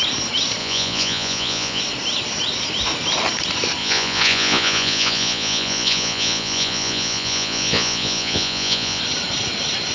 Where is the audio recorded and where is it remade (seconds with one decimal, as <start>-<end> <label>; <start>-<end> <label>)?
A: 0.0-0.6 recorded; 0.6-1.8 remade; 1.8-3.8 recorded; 3.8-9.0 remade; 9.0-9.9 recorded